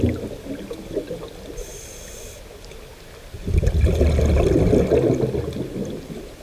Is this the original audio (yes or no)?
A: yes